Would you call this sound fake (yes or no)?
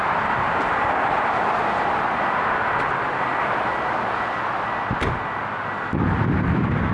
no